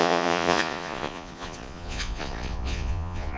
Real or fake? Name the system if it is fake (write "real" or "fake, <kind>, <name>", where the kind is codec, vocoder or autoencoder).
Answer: fake, vocoder, Vocos